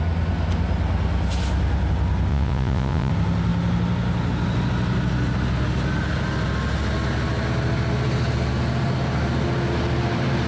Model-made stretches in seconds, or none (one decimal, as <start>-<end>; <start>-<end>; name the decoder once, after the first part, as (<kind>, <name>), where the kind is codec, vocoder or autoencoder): 2.3-3.1 (vocoder, Vocos)